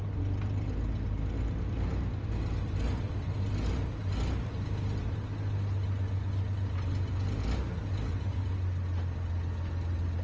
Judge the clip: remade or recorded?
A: recorded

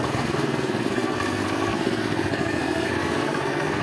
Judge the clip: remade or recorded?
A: remade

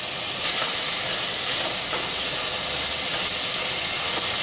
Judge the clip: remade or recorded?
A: recorded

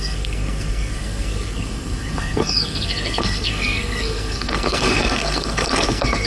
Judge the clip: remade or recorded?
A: remade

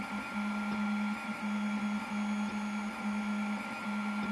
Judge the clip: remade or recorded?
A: recorded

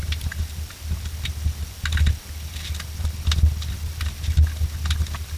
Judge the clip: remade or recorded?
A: recorded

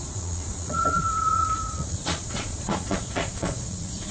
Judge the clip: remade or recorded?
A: remade